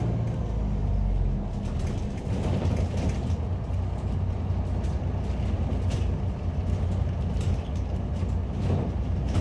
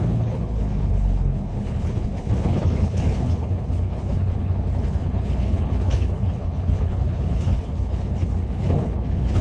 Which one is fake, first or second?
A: second